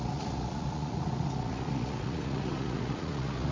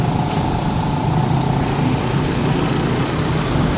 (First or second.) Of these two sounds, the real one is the second